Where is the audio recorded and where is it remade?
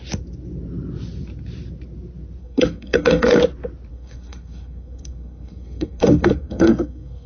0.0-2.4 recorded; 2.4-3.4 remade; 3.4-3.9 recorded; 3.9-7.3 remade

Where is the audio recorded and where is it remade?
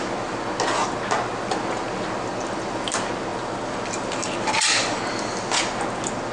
0.0-3.3 recorded; 3.3-4.3 remade; 4.3-6.3 recorded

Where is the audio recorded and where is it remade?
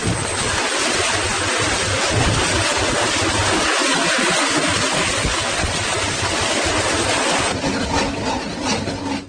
0.0-9.3 recorded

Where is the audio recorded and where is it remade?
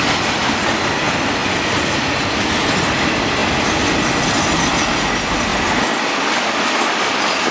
0.0-7.5 recorded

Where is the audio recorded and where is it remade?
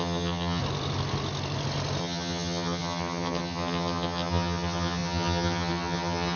0.0-0.6 remade; 0.6-2.0 recorded; 2.0-6.4 remade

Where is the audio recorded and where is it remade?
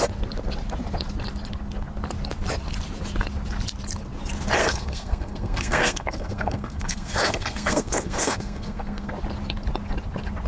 0.0-4.6 recorded; 4.6-9.1 remade; 9.1-10.5 recorded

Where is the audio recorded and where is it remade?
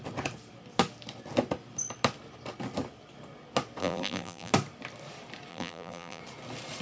0.0-3.8 recorded; 3.8-4.5 remade; 4.5-5.5 recorded; 5.5-6.2 remade; 6.2-6.8 recorded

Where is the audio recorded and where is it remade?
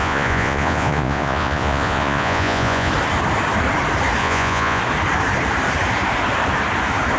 0.0-2.9 remade; 2.9-4.2 recorded; 4.2-4.8 remade; 4.8-7.2 recorded